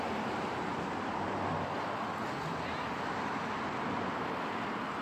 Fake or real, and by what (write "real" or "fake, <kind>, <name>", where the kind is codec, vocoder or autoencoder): real